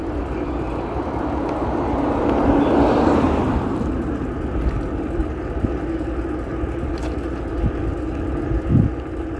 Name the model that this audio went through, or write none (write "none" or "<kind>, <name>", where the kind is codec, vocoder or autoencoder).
none